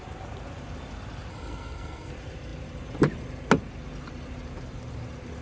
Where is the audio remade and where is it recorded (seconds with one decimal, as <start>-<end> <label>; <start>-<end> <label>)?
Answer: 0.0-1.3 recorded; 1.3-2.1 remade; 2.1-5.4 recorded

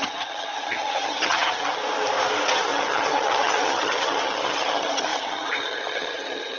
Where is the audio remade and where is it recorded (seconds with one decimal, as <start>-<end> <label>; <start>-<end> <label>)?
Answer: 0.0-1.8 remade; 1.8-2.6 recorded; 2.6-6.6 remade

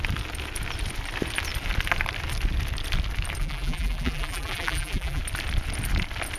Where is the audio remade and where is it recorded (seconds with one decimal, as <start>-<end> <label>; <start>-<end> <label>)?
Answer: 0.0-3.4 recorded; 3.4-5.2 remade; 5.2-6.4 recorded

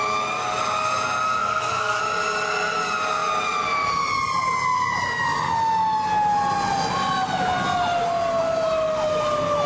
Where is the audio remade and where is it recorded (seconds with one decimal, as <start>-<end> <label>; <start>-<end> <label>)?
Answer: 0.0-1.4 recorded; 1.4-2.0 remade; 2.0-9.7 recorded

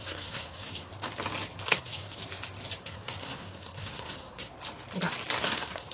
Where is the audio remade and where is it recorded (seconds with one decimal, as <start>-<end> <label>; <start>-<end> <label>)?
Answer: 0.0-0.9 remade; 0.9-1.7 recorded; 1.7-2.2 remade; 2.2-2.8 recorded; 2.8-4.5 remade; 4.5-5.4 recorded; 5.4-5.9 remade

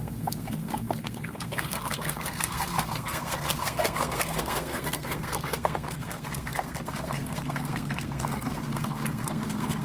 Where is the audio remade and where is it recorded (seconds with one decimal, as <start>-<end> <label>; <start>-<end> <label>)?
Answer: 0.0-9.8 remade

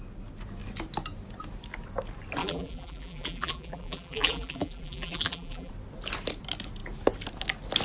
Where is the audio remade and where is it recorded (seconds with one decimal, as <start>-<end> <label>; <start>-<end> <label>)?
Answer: 0.0-2.4 recorded; 2.4-5.7 remade; 5.7-7.8 recorded